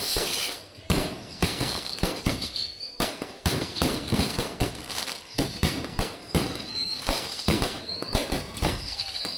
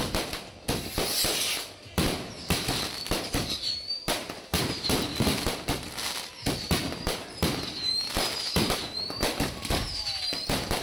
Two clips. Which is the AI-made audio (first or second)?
first